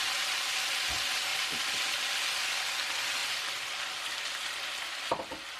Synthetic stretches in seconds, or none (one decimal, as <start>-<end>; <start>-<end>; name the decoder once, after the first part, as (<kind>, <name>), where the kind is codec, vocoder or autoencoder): 1.3-2.5 (vocoder, BigVGAN v2); 3.2-4.8